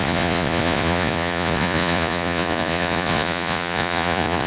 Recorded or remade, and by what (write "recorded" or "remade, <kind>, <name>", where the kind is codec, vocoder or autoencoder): remade, vocoder, Vocos